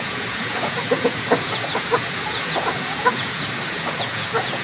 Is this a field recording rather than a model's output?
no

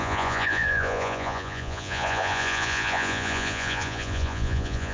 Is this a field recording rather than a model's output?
no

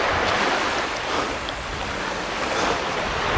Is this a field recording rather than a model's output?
yes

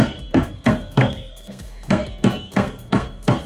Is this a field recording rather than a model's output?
no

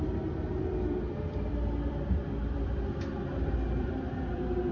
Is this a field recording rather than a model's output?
no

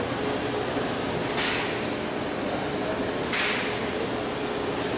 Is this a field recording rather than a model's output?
yes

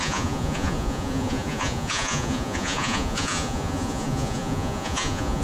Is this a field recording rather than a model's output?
no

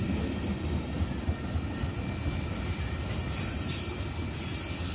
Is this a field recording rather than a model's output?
yes